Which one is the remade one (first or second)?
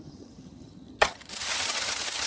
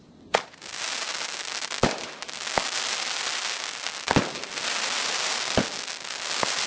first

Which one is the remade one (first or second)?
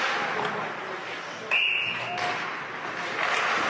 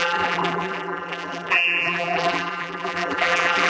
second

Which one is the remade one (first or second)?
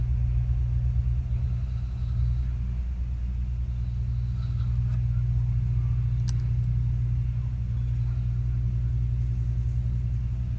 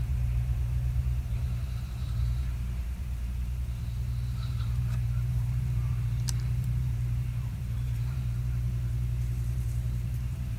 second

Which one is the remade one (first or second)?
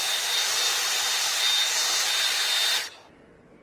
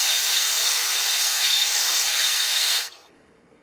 second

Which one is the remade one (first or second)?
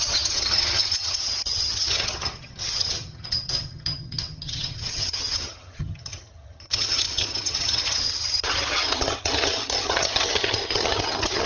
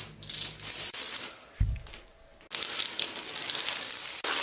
first